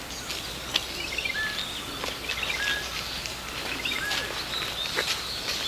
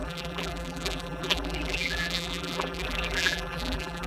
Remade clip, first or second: second